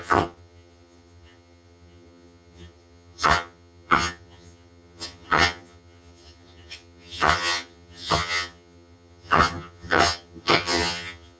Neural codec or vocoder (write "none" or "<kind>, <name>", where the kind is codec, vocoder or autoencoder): vocoder, HiFi-GAN